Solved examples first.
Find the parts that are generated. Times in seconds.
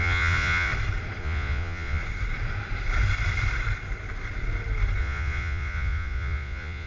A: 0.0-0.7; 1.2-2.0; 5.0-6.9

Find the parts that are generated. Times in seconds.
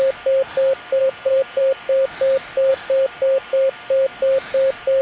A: 1.0-1.6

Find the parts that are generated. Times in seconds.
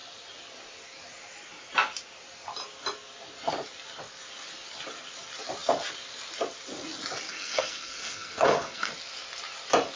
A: 7.3-8.9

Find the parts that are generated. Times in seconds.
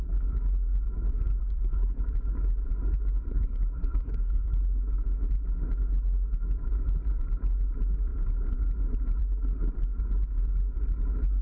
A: 1.4-2.0; 3.3-4.5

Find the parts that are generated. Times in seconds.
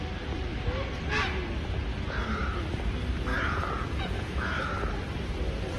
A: 3.3-4.6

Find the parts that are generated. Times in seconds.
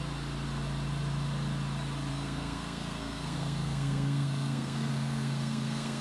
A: 2.1-6.0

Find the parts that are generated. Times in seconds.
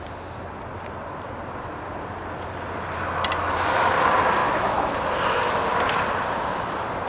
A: 4.4-5.0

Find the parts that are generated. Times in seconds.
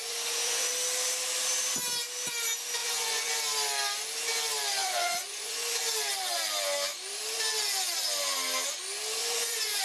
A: 0.0-0.7; 2.8-3.3; 4.8-5.8; 9.2-9.8